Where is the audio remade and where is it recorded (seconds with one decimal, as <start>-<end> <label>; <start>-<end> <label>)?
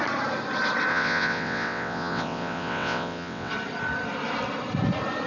0.0-0.9 recorded; 0.9-3.5 remade; 3.5-5.3 recorded